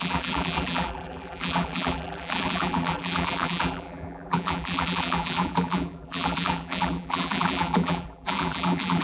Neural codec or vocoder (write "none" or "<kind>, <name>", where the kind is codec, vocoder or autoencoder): vocoder, BigVGAN v2